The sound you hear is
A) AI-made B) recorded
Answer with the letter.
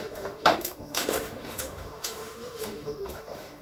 A